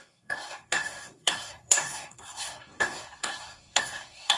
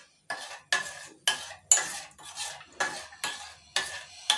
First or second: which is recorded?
second